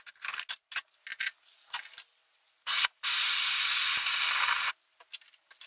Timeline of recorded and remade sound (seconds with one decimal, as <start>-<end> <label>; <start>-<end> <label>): 0.0-5.7 recorded